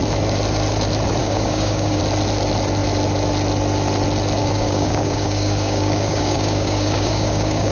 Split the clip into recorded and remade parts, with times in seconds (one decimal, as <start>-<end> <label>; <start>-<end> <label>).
0.0-1.2 recorded; 1.2-2.0 remade; 2.0-4.4 recorded; 4.4-7.7 remade

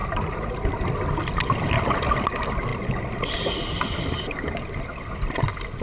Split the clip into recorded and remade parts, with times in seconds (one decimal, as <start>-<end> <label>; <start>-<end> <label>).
0.0-0.8 remade; 0.8-5.8 recorded

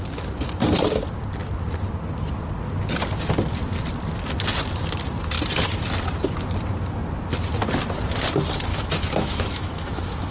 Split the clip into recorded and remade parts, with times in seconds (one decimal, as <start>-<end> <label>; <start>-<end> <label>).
0.0-8.7 recorded; 8.7-10.3 remade

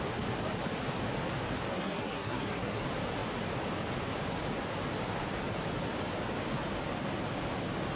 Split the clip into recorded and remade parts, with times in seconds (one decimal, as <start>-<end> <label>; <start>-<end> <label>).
0.0-1.7 recorded; 1.7-2.8 remade; 2.8-8.0 recorded

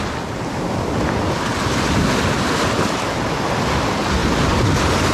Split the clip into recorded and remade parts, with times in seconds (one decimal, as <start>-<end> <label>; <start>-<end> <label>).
0.0-4.2 recorded; 4.2-5.1 remade

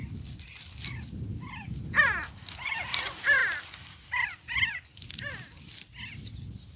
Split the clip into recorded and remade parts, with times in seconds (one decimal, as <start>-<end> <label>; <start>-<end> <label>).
0.0-6.8 recorded